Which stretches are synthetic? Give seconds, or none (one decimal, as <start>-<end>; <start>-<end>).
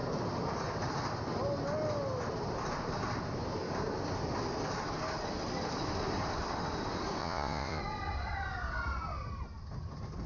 7.2-7.8